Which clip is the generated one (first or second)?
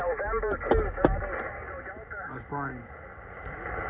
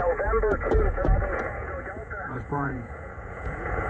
second